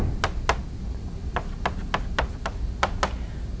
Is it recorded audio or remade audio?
recorded